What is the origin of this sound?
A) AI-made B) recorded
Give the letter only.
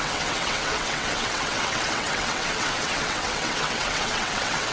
A